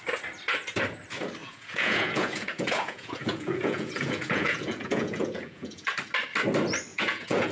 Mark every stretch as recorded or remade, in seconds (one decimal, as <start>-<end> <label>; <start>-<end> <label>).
0.0-1.4 recorded; 1.4-5.9 remade; 5.9-6.9 recorded; 6.9-7.5 remade